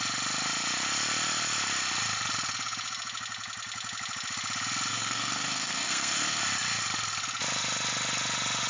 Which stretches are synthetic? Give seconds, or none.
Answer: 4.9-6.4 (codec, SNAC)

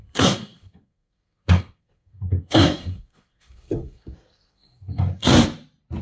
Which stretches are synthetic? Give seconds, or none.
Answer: 0.0-5.3 (codec, SNAC)

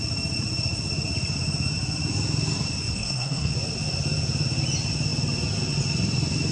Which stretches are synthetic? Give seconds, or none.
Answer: 2.9-3.5 (codec, SNAC)

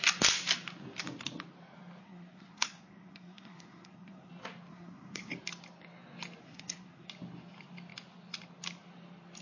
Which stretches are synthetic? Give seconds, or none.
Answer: 2.0-4.3 (codec, SNAC); 4.7-5.3; 6.4-7.1